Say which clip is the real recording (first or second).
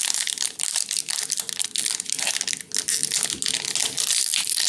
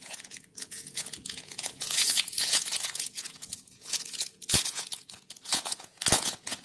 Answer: first